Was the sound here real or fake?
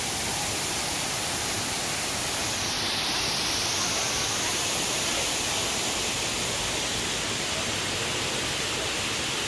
real